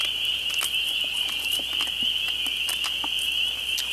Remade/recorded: recorded